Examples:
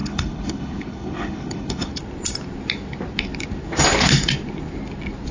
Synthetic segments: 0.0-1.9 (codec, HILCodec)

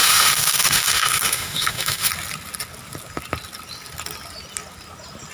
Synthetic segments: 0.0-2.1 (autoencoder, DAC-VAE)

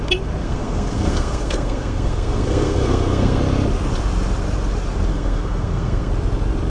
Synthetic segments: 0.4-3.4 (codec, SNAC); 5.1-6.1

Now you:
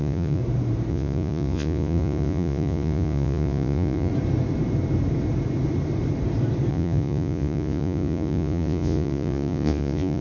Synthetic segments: 0.0-0.4 (vocoder, Vocos); 0.9-4.1; 6.7-10.2

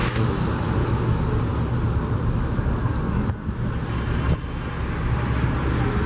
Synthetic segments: none